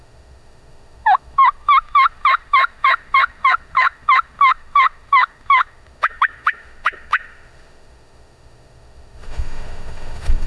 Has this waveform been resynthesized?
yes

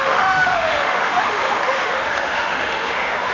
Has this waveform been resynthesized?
yes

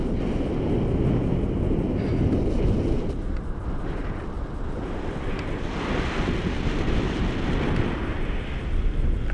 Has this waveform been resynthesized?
no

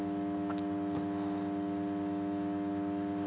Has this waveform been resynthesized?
no